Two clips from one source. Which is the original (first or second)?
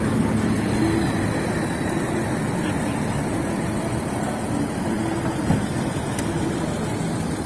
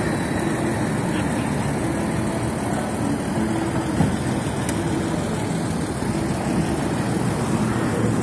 second